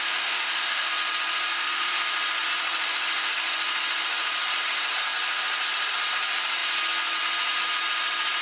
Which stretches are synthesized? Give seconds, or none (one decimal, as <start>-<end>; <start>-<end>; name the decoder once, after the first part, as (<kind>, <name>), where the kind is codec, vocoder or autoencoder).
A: 0.0-0.9 (autoencoder, DAC-VAE); 1.5-2.0